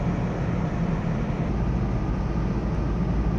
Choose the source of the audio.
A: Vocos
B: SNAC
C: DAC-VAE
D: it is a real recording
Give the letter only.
D